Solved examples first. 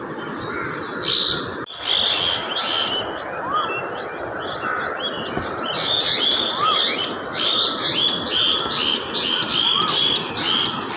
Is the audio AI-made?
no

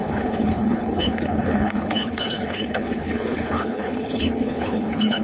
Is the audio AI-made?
yes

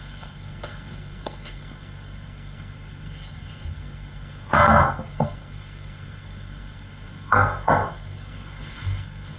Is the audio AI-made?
yes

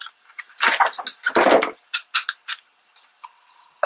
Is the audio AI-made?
no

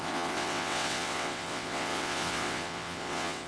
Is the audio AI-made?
yes